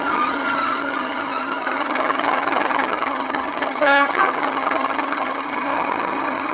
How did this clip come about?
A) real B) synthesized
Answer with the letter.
B